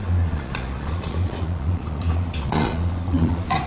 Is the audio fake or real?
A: fake